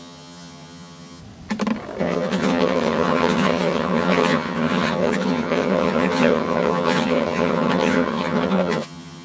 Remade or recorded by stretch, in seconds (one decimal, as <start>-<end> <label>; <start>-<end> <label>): 0.0-1.2 remade; 1.2-2.0 recorded; 2.0-9.2 remade